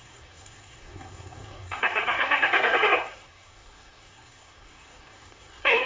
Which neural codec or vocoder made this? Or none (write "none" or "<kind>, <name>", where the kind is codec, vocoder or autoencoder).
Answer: codec, SNAC